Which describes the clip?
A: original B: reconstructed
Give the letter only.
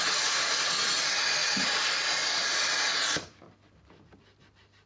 A